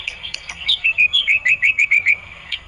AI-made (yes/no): yes